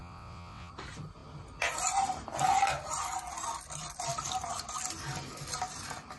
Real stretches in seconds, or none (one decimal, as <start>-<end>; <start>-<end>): 0.7-6.2